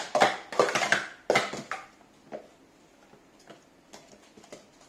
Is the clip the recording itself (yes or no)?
yes